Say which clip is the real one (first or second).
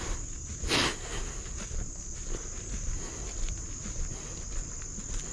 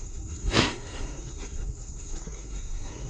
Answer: first